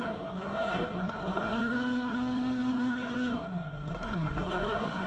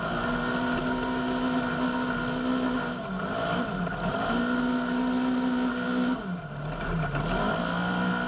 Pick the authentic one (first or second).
second